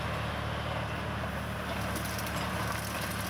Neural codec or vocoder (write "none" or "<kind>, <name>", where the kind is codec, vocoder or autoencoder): none